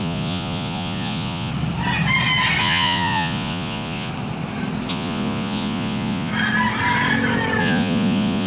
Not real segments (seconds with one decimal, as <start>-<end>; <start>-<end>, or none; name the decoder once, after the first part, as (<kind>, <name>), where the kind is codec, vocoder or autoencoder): 0.0-1.5 (vocoder, Vocos); 2.6-4.1; 4.9-6.3; 7.6-8.5